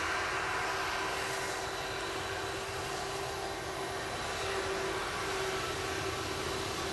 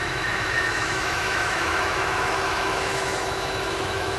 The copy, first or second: second